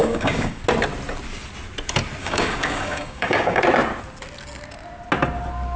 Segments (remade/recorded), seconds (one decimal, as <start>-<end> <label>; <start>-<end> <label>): 0.0-0.6 remade; 0.6-2.2 recorded; 2.2-3.6 remade; 3.6-5.8 recorded